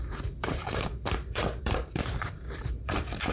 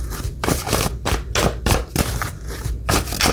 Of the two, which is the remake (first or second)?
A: first